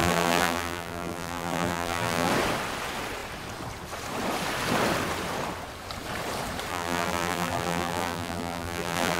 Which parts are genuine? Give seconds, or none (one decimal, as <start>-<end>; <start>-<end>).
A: 2.3-6.7